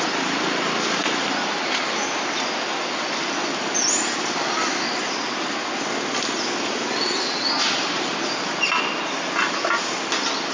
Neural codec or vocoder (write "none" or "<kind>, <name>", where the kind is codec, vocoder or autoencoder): none